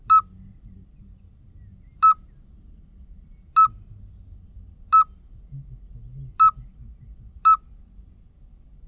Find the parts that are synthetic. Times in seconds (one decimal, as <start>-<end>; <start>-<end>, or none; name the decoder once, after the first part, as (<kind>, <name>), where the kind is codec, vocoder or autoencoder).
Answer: none